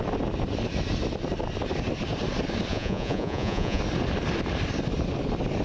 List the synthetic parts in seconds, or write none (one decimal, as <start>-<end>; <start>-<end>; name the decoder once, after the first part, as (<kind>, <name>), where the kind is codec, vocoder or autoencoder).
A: 2.7-3.8 (vocoder, Vocos)